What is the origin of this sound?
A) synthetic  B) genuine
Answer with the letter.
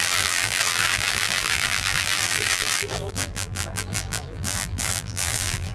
A